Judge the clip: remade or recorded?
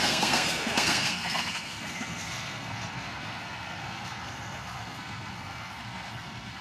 remade